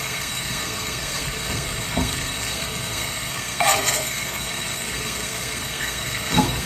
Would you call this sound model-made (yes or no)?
yes